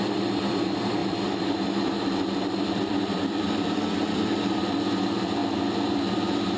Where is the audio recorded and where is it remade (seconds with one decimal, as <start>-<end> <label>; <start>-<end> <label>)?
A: 0.0-6.6 remade